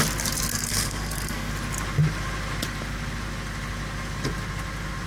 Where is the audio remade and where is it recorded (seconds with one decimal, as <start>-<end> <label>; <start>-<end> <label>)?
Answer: 0.0-0.5 recorded; 0.5-1.5 remade; 1.5-5.1 recorded